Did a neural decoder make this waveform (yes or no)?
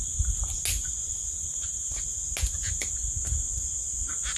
no